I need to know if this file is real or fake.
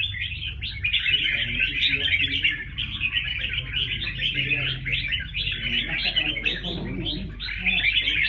real